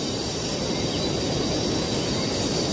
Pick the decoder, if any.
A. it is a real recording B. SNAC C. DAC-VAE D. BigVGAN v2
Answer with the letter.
A